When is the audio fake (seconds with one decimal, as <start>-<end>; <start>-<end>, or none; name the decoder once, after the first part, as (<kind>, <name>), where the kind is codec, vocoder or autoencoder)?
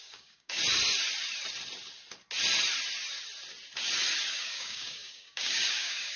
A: 0.0-0.6 (codec, DAC); 4.3-6.2